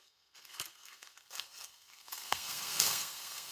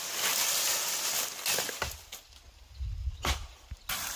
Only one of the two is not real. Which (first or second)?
first